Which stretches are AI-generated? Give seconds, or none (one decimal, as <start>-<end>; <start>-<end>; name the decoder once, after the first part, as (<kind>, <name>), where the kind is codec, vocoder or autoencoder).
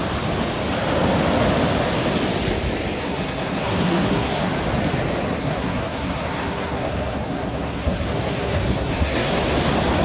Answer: 3.0-4.5 (codec, SNAC); 5.4-9.4